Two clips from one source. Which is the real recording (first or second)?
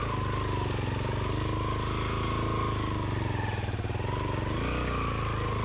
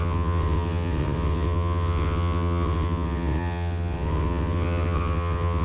first